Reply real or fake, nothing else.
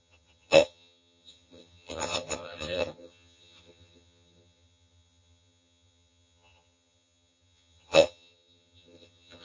fake